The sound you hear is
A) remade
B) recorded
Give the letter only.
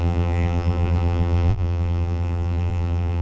A